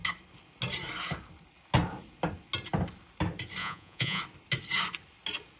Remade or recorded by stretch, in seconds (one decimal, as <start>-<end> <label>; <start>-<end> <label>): 0.0-3.6 recorded; 3.6-4.2 remade; 4.2-5.6 recorded